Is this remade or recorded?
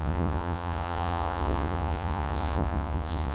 remade